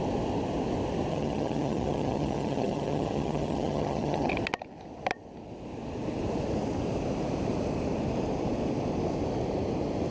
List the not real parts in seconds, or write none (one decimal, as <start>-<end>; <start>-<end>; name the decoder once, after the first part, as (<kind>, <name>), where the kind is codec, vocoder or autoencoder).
1.1-4.3 (vocoder, HiFi-GAN)

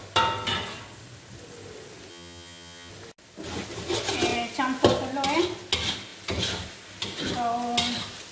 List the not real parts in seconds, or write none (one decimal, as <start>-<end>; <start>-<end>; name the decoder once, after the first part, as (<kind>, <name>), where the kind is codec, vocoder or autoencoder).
2.1-2.9 (vocoder, HiFi-GAN)

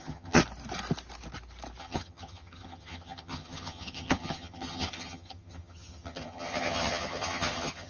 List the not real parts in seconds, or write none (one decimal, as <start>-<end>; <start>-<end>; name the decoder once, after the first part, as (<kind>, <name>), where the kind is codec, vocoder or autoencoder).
0.0-0.4 (vocoder, HiFi-GAN); 1.8-7.9

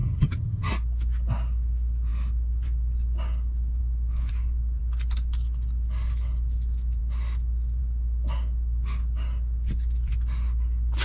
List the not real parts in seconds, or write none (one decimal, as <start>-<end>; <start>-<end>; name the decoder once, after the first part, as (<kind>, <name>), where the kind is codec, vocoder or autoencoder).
0.0-0.7 (vocoder, HiFi-GAN)

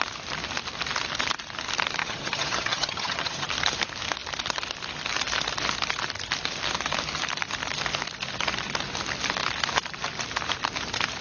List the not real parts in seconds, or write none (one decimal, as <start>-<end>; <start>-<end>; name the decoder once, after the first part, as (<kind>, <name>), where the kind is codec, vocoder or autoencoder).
2.0-3.5 (vocoder, HiFi-GAN)

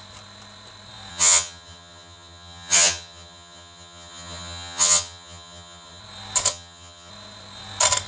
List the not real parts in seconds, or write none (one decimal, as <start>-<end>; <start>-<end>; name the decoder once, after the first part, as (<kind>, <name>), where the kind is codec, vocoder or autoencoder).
1.1-6.0 (vocoder, HiFi-GAN); 6.5-7.1

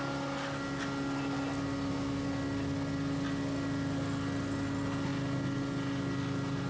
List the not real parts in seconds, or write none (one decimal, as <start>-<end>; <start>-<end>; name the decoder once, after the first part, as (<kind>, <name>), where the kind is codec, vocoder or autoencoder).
none

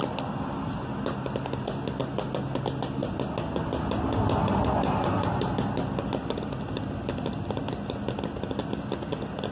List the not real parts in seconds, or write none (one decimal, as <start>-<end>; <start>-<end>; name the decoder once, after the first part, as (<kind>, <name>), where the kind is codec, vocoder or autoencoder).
none